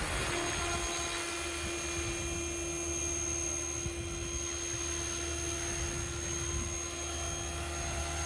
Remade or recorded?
recorded